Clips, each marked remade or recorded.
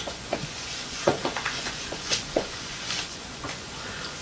remade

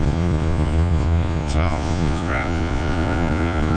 remade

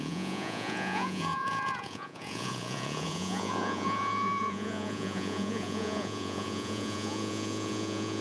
remade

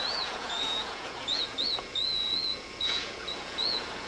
remade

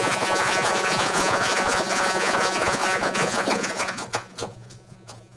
remade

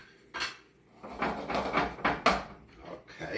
recorded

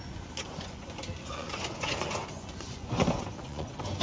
remade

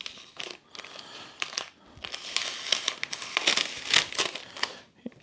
recorded